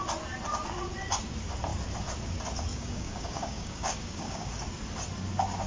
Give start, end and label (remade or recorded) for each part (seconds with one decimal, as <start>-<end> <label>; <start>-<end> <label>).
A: 0.0-2.7 recorded; 2.7-4.5 remade; 4.5-5.7 recorded